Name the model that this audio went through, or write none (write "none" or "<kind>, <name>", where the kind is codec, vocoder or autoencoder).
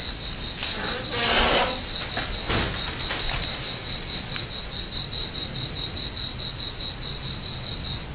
none